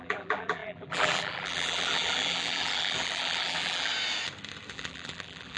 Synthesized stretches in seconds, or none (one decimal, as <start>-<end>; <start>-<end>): 0.0-3.9; 4.7-5.6